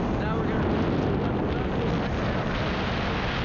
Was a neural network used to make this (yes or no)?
no